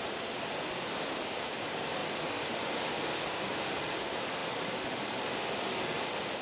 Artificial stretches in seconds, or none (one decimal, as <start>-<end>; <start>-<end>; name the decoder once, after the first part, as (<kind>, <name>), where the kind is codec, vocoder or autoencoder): none